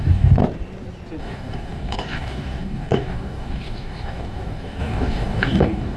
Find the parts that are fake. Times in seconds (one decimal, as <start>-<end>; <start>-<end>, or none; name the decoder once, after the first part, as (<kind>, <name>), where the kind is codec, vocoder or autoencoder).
0.0-0.4 (codec, DAC); 1.2-6.0

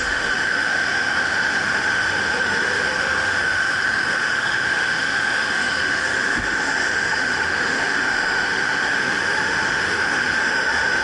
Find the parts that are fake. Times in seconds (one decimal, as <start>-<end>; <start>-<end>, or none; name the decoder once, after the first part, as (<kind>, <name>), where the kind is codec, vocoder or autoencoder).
0.0-11.0 (autoencoder, DAC-VAE)